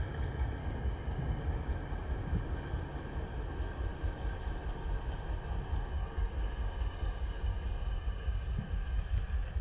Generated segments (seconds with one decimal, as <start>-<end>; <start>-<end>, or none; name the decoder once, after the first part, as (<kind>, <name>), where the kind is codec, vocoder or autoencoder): 0.6-1.4 (codec, DAC); 5.9-9.0

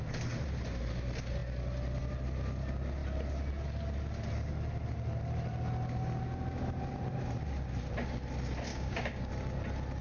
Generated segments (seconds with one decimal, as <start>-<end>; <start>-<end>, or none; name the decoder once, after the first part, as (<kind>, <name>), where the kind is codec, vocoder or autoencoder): 8.7-9.3 (codec, DAC)

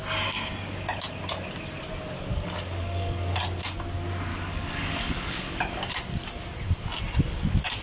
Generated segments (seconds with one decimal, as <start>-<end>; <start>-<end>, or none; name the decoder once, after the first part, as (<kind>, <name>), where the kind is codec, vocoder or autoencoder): 2.3-3.4 (codec, DAC); 4.3-5.9

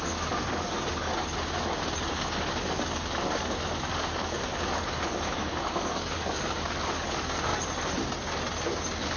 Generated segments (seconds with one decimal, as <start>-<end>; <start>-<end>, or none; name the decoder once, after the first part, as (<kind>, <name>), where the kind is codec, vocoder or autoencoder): 0.0-1.1 (codec, DAC); 2.1-7.5

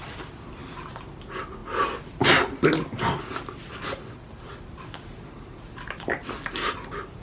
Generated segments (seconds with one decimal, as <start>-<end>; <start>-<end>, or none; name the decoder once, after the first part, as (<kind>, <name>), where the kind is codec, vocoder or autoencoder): none

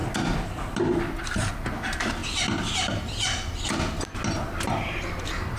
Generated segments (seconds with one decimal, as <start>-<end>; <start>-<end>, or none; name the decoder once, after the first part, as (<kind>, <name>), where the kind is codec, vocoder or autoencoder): none

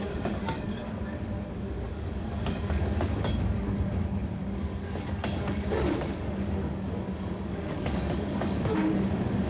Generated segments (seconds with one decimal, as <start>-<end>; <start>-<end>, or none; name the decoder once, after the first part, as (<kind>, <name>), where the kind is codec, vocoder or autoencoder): 0.0-9.5 (codec, DAC)

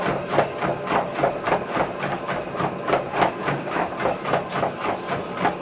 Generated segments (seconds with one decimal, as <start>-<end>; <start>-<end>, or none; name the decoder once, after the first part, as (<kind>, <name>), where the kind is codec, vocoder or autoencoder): 3.4-3.9 (codec, DAC)